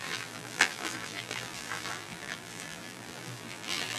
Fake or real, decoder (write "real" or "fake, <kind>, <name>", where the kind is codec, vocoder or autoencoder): fake, vocoder, BigVGAN v2